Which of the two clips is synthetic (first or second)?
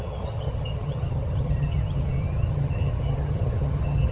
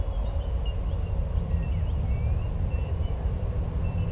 first